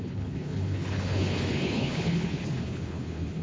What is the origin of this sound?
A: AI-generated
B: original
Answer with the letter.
A